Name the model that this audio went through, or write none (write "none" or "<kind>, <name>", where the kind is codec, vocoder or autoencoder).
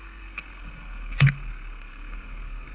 codec, SNAC